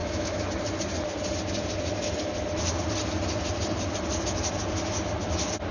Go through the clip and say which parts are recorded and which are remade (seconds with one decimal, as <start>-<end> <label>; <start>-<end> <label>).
0.0-0.5 remade; 0.5-5.7 recorded